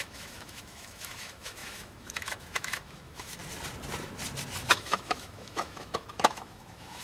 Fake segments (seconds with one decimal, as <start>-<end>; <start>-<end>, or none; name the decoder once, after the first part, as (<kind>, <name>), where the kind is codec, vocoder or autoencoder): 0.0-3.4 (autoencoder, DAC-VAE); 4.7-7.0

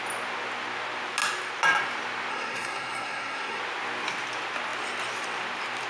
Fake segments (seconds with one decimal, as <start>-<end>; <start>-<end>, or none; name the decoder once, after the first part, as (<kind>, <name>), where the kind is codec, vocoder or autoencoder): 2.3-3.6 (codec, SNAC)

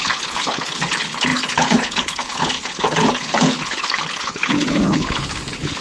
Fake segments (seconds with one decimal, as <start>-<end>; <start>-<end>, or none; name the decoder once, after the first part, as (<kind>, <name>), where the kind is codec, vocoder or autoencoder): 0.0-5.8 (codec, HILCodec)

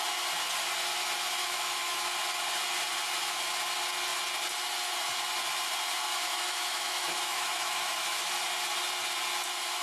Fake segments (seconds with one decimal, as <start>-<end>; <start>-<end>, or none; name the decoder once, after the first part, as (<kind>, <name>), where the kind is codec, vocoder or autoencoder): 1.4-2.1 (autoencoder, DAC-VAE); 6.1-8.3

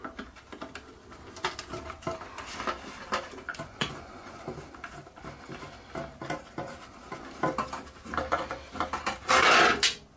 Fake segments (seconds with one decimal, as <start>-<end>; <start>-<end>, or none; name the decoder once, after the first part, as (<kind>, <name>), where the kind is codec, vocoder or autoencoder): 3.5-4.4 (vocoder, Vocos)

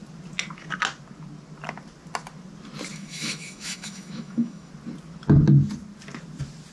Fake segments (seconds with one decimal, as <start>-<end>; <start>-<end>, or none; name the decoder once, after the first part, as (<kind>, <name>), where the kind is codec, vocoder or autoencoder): 2.9-4.7 (autoencoder, DAC-VAE)